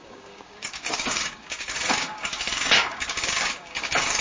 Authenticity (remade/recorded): remade